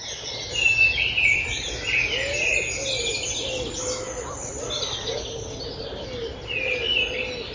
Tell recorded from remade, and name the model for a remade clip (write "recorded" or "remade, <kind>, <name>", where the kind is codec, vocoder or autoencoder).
recorded